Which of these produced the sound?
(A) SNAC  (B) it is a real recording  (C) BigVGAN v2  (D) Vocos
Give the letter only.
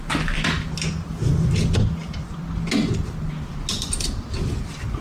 B